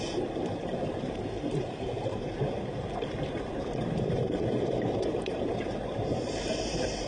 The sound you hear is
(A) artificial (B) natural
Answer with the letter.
A